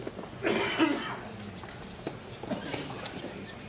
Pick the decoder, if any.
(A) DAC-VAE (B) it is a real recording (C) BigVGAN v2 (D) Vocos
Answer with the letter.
B